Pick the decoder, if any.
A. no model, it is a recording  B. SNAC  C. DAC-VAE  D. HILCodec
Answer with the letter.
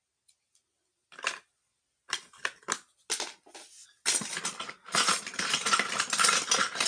A